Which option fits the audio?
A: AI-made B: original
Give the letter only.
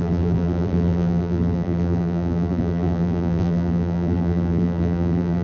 A